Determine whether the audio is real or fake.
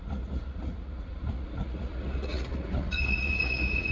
fake